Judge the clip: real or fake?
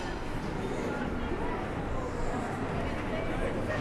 real